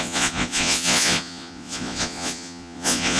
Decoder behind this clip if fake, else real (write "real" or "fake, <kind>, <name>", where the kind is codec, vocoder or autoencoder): fake, vocoder, Vocos